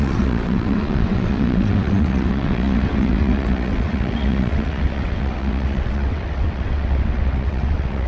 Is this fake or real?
fake